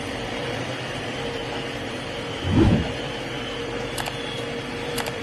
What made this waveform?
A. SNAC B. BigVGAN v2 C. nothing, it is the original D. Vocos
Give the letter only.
B